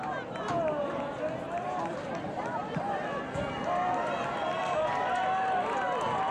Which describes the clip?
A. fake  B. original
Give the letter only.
B